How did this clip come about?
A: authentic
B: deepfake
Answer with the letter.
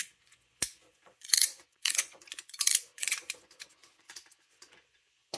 B